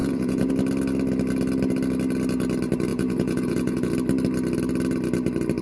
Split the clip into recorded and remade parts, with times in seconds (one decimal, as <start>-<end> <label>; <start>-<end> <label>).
0.0-0.5 remade; 0.5-2.9 recorded; 2.9-3.9 remade; 3.9-5.6 recorded